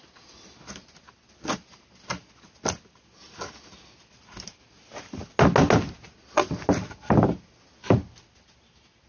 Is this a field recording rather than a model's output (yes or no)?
yes